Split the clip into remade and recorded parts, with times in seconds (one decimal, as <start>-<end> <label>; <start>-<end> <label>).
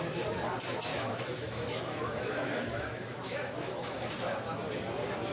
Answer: 0.0-0.9 recorded; 0.9-4.1 remade; 4.1-5.3 recorded